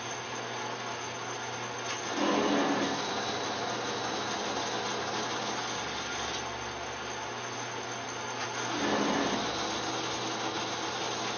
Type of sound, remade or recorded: recorded